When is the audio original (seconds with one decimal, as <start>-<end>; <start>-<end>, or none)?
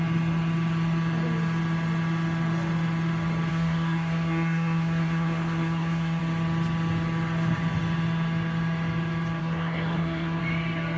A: 0.0-3.5; 6.2-9.4; 10.4-11.0